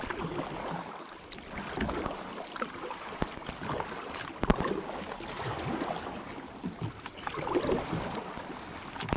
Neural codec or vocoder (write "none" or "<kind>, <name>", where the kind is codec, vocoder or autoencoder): none